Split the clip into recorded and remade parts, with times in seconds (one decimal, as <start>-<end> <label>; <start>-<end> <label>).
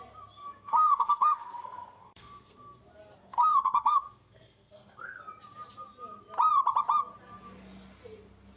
0.0-0.4 recorded; 0.4-2.8 remade; 2.8-3.2 recorded; 3.2-5.2 remade; 5.2-8.6 recorded